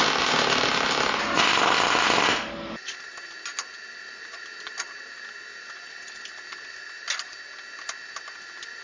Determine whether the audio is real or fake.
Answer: real